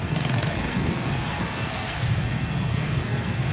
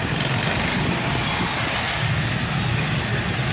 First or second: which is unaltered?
second